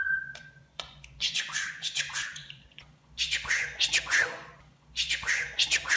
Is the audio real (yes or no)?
no